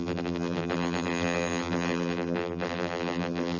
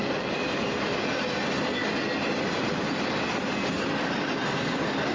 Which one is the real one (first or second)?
second